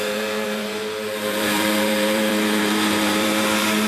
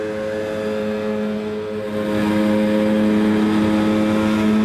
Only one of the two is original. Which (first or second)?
second